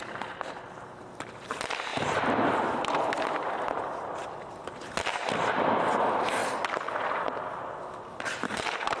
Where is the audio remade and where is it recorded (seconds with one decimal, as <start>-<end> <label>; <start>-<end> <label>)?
0.0-4.2 remade; 4.2-5.3 recorded; 5.3-6.4 remade; 6.4-8.1 recorded; 8.1-9.0 remade